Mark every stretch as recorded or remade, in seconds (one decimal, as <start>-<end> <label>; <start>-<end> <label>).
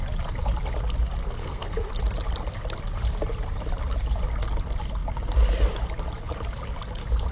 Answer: 0.0-1.4 recorded; 1.4-1.9 remade; 1.9-7.3 recorded